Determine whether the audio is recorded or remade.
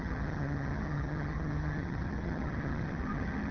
remade